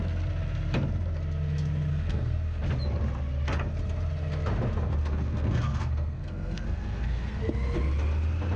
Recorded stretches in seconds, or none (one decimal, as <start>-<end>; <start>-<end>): 0.0-1.9; 2.6-5.0; 7.4-8.6